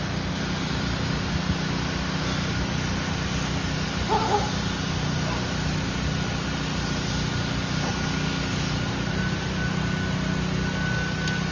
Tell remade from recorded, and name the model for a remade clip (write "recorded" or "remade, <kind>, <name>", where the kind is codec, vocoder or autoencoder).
recorded